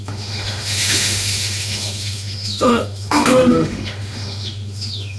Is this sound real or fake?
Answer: fake